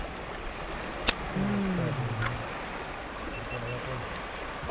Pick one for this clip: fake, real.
real